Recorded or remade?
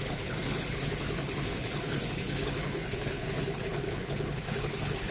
remade